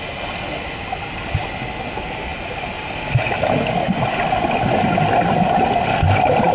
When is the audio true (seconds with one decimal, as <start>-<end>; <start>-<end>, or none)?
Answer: 0.0-6.5